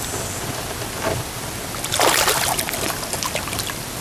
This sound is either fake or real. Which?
real